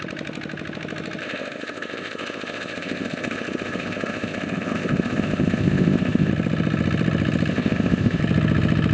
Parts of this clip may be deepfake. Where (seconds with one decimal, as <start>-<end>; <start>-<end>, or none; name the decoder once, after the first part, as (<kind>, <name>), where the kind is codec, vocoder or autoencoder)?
1.2-6.3 (codec, ZipCodec); 7.5-8.2